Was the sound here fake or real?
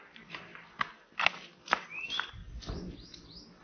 real